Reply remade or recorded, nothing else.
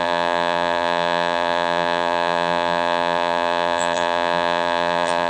remade